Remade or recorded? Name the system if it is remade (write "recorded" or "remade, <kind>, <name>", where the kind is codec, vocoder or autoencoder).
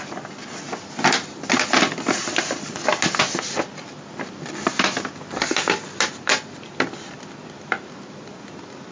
recorded